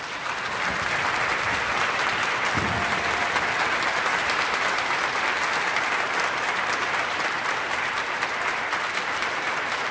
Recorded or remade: remade